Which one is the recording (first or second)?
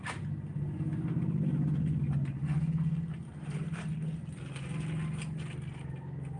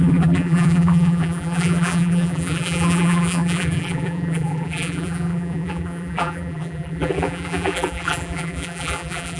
first